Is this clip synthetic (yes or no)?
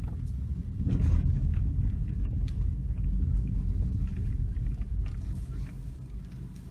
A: yes